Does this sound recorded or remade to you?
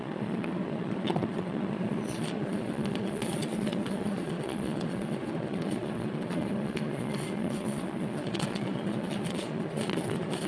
remade